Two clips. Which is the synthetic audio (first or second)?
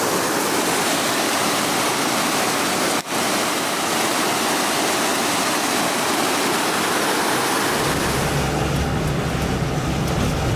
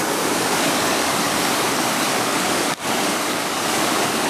second